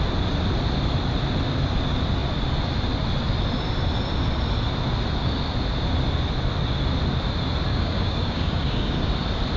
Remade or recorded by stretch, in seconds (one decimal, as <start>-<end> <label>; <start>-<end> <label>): 0.0-7.7 recorded; 7.7-9.1 remade; 9.1-9.6 recorded